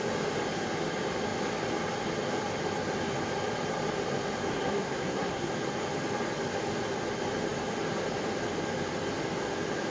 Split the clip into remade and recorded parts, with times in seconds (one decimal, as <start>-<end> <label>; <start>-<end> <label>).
0.0-4.5 recorded; 4.5-5.5 remade; 5.5-9.9 recorded